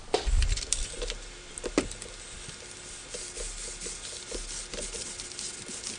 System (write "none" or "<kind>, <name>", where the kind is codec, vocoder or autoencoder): none